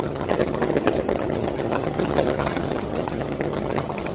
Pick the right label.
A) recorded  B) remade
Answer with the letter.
B